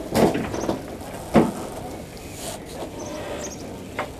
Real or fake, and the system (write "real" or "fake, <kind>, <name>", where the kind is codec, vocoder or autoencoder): real